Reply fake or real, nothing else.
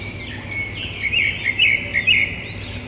real